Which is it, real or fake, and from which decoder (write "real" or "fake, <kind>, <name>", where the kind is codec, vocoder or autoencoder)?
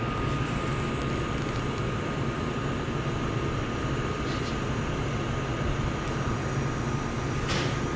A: real